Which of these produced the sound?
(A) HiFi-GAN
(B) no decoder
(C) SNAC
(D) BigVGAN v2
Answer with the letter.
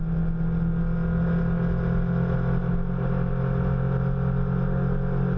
B